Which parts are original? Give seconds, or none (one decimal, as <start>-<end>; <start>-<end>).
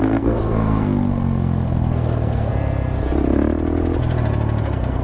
2.5-4.6